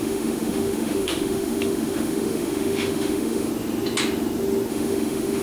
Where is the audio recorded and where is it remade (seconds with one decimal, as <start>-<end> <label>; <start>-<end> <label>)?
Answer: 0.0-3.5 remade; 3.5-4.7 recorded; 4.7-5.4 remade